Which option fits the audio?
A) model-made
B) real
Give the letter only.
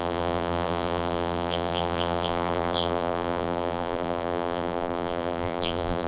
A